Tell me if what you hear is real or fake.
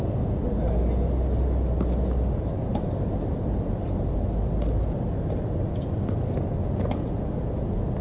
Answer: real